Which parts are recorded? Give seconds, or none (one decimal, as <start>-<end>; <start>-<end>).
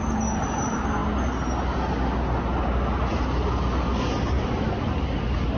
0.0-5.6